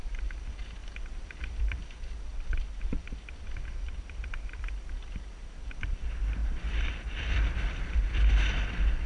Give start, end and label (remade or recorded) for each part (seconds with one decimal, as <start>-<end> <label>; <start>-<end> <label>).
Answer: 0.0-0.8 recorded; 0.8-1.8 remade; 1.8-2.3 recorded; 2.3-6.0 remade; 6.0-6.4 recorded; 6.4-8.3 remade; 8.3-9.1 recorded